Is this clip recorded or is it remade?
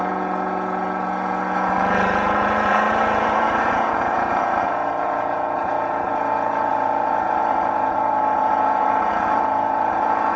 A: remade